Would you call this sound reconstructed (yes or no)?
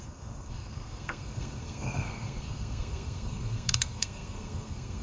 yes